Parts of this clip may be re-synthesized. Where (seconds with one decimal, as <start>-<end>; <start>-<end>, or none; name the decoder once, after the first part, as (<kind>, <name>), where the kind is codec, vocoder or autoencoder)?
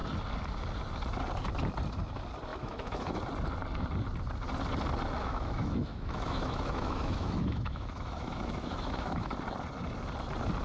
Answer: 2.5-3.2 (autoencoder, DAC-VAE); 5.2-9.3